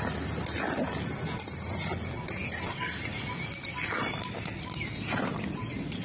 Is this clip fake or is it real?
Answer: real